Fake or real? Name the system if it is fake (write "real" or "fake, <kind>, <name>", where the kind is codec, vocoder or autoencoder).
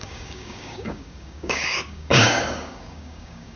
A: fake, codec, DAC